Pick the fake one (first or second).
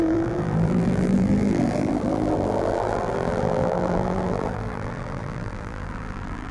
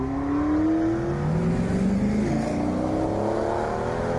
first